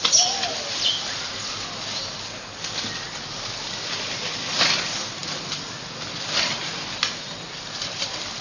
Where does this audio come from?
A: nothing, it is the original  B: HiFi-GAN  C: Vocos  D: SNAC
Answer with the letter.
A